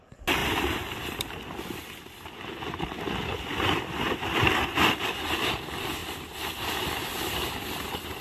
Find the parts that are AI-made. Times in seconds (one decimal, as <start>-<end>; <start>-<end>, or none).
none